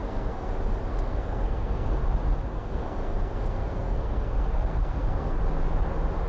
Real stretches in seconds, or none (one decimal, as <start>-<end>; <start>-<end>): 0.5-0.9; 2.0-2.5; 5.4-6.3